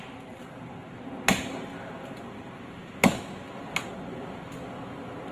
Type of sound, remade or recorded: recorded